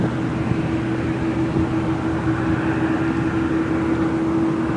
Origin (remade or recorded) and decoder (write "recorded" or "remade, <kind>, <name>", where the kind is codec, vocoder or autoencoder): recorded